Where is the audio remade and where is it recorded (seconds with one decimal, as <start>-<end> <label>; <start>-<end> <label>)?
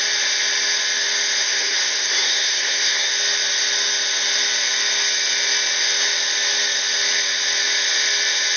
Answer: 0.0-1.4 recorded; 1.4-3.1 remade; 3.1-8.6 recorded